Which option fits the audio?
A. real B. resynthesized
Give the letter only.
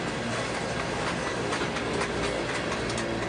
A